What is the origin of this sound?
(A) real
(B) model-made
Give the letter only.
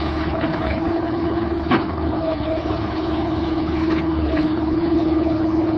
B